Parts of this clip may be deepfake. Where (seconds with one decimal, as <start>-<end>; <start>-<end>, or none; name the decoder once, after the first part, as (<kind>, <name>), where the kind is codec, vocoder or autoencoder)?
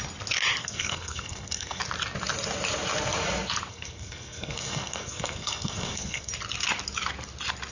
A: 0.6-1.8 (codec, SNAC); 3.7-6.3